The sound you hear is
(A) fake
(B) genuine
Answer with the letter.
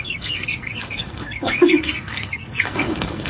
A